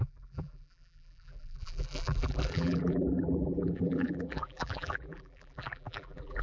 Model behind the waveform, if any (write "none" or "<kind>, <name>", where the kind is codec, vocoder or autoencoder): vocoder, BigVGAN v2